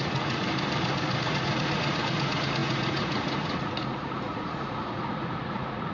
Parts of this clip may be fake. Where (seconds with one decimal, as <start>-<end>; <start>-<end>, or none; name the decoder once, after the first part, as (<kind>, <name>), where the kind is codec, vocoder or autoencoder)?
0.0-0.5 (vocoder, Vocos); 1.2-5.9